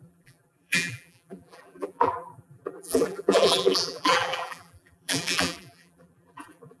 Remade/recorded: remade